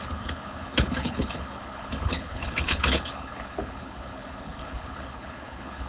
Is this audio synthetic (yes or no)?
yes